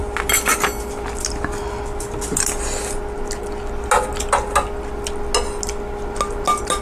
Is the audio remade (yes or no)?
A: no